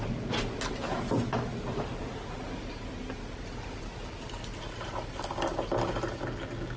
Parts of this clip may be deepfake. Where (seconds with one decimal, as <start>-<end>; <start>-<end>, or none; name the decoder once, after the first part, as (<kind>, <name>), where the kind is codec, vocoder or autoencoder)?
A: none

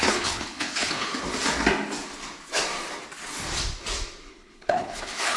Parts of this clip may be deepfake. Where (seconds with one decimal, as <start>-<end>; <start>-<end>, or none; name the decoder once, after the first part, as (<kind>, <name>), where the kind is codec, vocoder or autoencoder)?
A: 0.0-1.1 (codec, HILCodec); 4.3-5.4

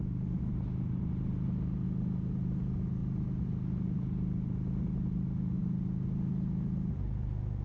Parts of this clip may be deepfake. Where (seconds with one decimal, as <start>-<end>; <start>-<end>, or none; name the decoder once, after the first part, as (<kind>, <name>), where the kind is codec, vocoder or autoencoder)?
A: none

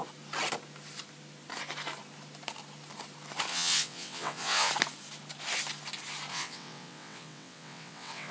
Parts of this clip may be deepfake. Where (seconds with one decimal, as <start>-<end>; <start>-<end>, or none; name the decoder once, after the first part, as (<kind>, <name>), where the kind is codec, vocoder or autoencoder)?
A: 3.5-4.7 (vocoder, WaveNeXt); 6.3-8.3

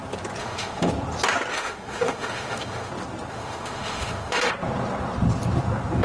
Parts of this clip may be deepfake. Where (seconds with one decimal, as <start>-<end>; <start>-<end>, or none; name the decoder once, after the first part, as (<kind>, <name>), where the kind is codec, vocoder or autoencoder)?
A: 0.4-0.9 (autoencoder, DAC-VAE); 1.5-2.9; 3.3-4.5